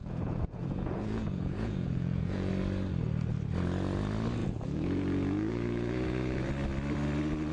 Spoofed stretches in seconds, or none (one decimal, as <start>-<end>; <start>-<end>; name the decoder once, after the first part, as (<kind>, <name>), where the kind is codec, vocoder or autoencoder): 0.0-2.5 (vocoder, Vocos); 4.4-6.5